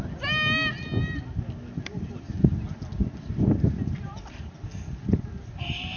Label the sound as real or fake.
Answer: real